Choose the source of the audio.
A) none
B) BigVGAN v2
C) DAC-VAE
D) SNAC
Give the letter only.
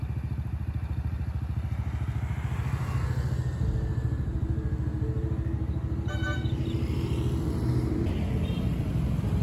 A